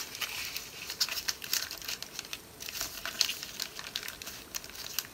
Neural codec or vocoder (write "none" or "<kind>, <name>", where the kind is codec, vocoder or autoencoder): none